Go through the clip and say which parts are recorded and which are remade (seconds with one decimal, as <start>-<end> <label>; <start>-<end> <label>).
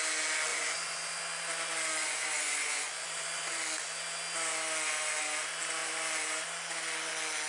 0.0-0.5 recorded; 0.5-1.2 remade; 1.2-2.0 recorded; 2.0-3.6 remade; 3.6-7.5 recorded